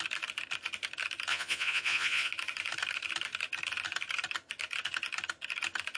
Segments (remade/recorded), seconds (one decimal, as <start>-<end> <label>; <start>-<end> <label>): 0.0-1.3 recorded; 1.3-2.3 remade; 2.3-6.0 recorded